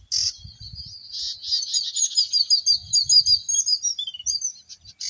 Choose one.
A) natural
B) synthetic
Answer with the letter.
A